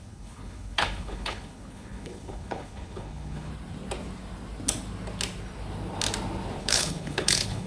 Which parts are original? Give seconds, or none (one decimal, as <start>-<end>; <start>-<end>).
3.5-6.6